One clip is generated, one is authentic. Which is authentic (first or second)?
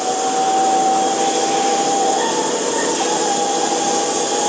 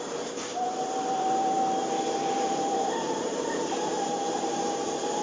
first